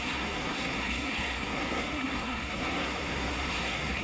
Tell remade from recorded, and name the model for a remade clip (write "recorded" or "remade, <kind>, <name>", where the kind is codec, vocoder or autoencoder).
remade, codec, SNAC